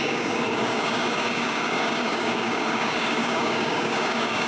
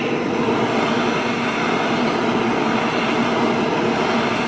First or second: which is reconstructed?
first